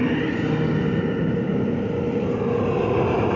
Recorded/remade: recorded